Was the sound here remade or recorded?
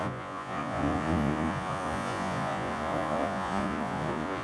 remade